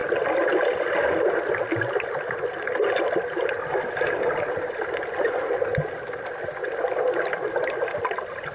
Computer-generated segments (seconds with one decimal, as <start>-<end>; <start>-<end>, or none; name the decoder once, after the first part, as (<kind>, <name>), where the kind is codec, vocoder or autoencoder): none